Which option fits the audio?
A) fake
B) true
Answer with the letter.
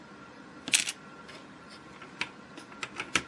B